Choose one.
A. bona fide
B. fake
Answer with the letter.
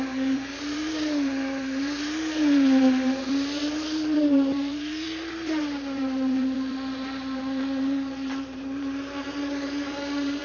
B